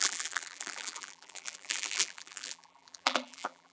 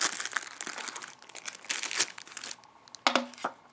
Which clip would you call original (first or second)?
second